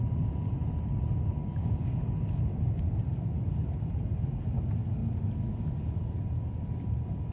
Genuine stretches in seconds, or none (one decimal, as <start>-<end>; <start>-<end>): 0.0-1.4; 2.0-7.3